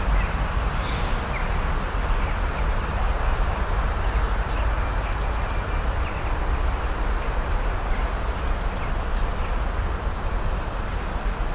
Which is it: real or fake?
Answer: real